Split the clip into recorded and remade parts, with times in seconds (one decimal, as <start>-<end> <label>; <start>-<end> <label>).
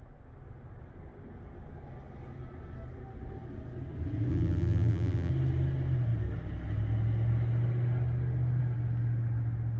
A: 0.0-4.3 recorded; 4.3-5.3 remade; 5.3-9.8 recorded